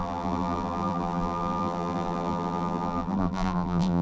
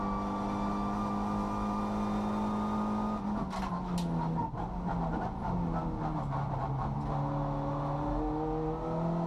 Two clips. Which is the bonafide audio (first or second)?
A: second